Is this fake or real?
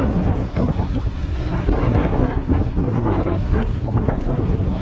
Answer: fake